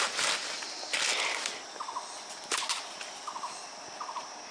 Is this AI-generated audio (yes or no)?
no